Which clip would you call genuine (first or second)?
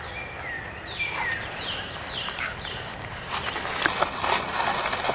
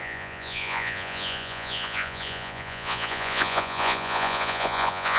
first